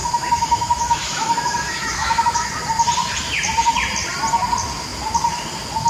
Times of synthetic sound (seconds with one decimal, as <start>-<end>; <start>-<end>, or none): 0.0-2.5